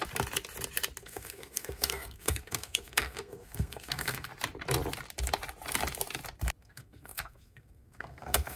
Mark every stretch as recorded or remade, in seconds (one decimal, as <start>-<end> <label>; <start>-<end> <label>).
0.0-1.0 recorded; 1.0-4.3 remade; 4.3-6.6 recorded; 6.6-8.6 remade